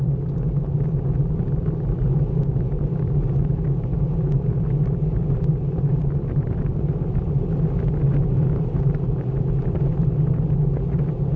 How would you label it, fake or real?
real